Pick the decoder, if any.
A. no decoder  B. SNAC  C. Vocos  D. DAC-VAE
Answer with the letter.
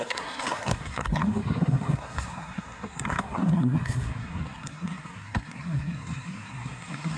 B